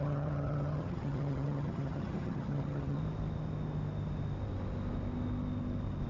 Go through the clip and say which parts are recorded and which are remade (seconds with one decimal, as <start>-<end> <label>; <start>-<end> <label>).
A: 0.0-3.0 remade; 3.0-6.1 recorded